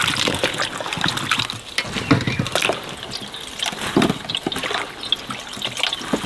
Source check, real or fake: real